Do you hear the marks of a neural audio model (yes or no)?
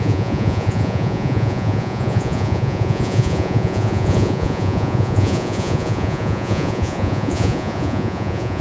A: yes